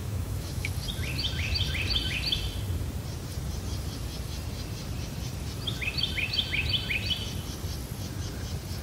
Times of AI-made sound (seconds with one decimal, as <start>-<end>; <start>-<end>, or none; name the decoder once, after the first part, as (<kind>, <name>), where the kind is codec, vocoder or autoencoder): 0.0-0.7 (autoencoder, DAC-VAE)

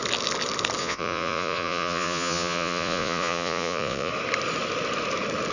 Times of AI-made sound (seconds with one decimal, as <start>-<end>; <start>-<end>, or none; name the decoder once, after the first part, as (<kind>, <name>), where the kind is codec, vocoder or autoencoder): 0.8-4.1 (vocoder, Vocos)

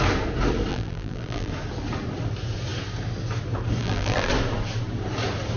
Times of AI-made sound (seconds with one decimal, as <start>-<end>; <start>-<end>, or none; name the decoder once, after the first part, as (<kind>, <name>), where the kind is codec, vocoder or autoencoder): 0.7-1.5 (vocoder, BigVGAN v2); 3.8-4.3